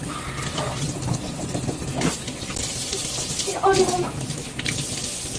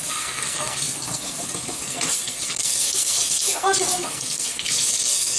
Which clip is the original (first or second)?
first